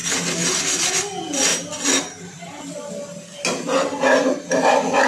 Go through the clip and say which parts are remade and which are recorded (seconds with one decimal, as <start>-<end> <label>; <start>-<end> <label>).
0.0-5.1 recorded